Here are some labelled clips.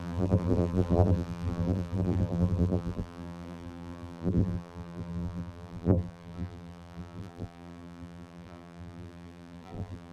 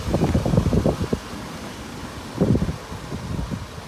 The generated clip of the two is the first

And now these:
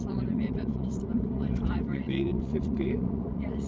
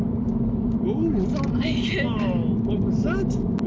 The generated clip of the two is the first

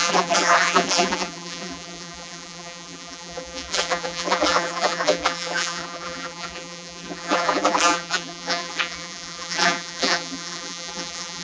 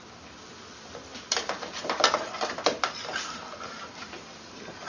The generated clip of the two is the first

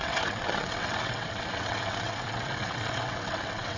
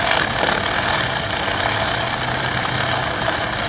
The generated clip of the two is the first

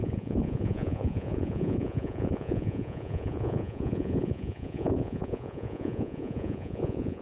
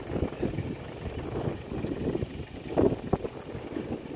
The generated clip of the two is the first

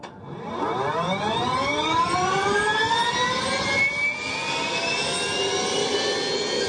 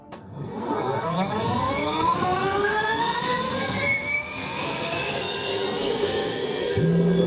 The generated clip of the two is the second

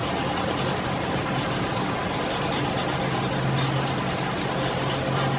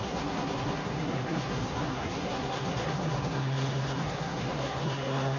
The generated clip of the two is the second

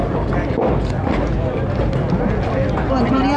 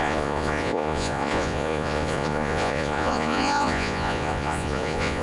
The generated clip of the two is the second